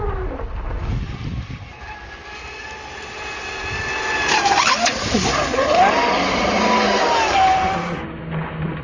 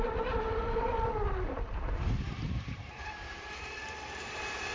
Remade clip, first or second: second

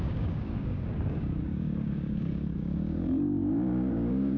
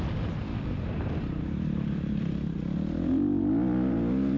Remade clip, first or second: first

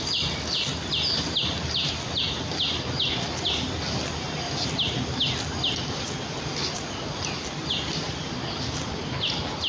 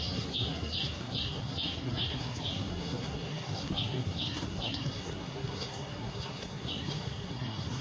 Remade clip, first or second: second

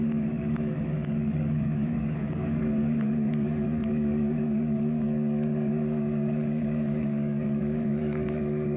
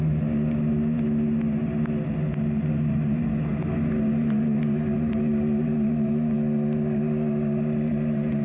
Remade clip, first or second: first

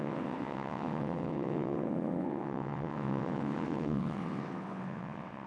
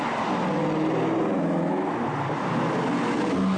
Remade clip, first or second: first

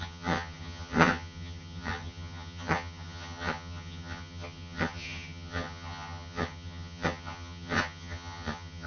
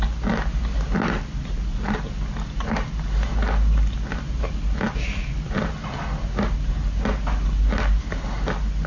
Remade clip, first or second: first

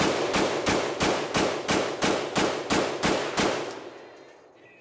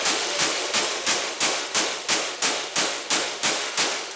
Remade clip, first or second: second